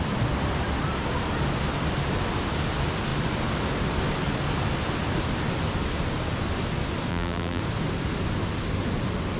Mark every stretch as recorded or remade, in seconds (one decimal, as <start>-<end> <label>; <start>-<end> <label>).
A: 0.0-7.1 recorded; 7.1-7.6 remade; 7.6-9.4 recorded